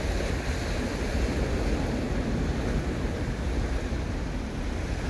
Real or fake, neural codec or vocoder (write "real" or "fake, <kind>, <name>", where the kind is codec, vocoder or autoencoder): real